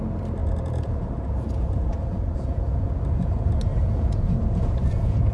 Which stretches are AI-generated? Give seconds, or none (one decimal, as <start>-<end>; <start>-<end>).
0.4-3.0; 3.7-5.3